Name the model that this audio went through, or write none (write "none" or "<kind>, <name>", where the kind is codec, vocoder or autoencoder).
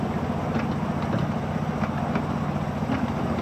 none